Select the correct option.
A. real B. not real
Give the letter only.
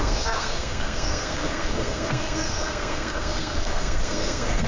B